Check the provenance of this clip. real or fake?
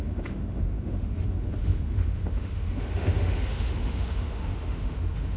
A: fake